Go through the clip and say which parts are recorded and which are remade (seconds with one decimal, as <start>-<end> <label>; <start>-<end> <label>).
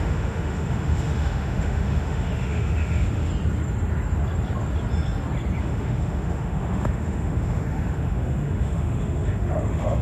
0.0-3.3 remade; 3.3-5.6 recorded; 5.6-10.0 remade